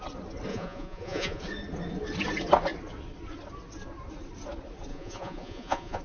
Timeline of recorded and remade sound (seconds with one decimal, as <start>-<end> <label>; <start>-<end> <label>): 0.0-0.5 recorded; 0.5-1.4 remade; 1.4-4.9 recorded; 4.9-6.0 remade